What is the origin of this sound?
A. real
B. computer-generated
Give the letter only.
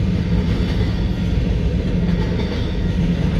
A